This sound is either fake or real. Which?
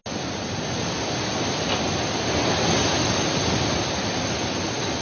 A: real